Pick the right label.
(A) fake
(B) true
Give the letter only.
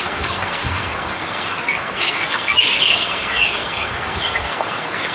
A